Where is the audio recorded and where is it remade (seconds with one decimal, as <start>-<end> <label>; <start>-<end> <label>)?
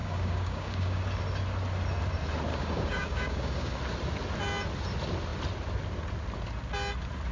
0.0-1.0 remade; 1.0-2.5 recorded; 2.5-3.8 remade; 3.8-7.3 recorded